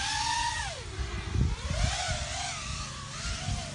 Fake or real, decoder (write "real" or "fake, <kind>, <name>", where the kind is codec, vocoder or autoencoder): real